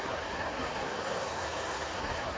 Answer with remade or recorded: remade